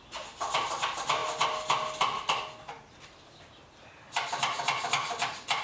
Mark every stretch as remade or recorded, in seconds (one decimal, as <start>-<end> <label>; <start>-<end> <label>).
0.0-5.6 recorded